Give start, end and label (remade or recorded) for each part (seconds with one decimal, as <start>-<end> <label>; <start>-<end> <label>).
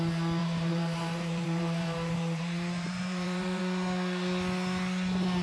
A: 0.0-0.4 recorded; 0.4-3.6 remade; 3.6-5.4 recorded